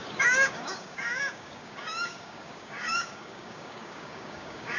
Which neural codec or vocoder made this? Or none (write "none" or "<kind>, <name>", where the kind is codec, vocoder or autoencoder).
codec, DAC